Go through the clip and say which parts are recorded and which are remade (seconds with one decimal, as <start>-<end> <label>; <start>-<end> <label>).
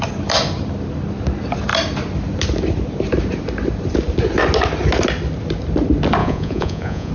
0.0-6.2 recorded; 6.2-7.1 remade